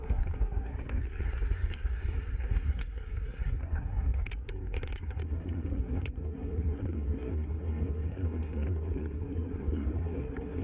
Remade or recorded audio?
remade